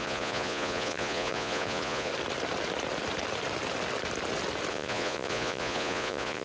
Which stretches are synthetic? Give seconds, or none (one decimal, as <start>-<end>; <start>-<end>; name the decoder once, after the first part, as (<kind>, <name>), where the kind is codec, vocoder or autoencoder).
0.0-2.1 (vocoder, Vocos); 4.7-6.4